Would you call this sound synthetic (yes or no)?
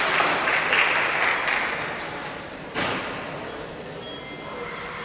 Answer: no